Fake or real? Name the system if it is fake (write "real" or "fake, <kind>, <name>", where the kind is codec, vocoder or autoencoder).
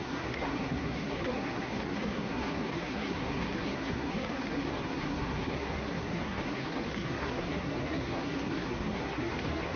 fake, codec, SNAC